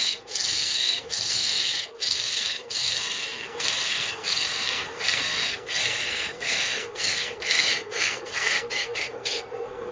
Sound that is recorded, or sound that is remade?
remade